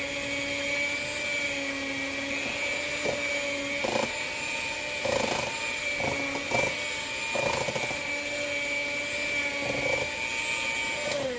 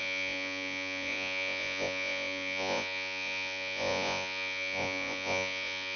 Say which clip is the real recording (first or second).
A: first